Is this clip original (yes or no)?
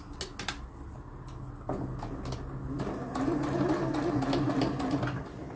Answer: yes